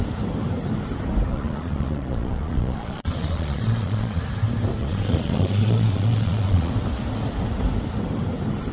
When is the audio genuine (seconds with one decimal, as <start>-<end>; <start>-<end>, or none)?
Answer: 0.0-1.3; 4.2-4.8; 6.7-8.7